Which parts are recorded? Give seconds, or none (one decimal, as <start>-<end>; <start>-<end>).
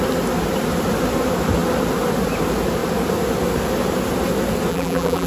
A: 0.0-4.7